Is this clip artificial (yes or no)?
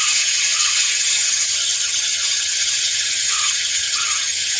yes